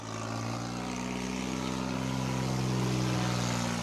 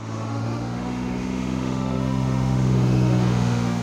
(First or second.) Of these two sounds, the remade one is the second